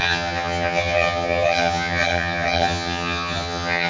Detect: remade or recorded remade